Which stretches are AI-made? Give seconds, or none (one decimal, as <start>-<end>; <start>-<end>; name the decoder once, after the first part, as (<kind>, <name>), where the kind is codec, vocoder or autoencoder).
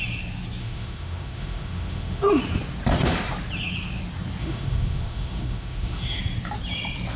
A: 0.6-2.4 (autoencoder, DAC-VAE); 4.4-6.2